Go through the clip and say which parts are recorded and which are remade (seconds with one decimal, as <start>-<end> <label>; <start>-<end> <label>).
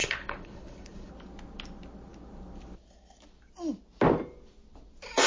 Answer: 0.0-1.1 remade; 1.1-5.3 recorded